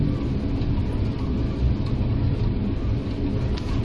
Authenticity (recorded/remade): recorded